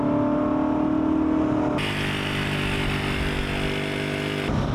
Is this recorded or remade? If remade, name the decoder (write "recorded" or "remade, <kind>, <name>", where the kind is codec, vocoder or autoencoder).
recorded